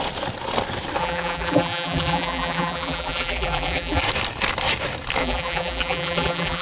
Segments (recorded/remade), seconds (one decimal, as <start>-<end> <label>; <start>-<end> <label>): 0.0-1.0 recorded; 1.0-4.0 remade; 4.0-5.2 recorded; 5.2-6.6 remade